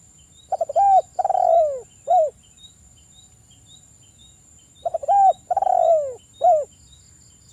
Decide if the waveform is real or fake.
real